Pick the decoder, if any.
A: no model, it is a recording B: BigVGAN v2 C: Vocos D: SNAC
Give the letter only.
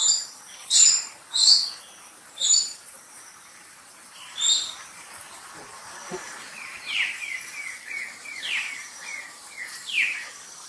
B